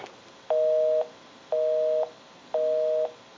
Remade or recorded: recorded